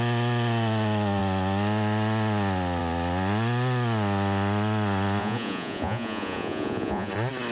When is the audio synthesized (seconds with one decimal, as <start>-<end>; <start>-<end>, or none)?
5.2-7.1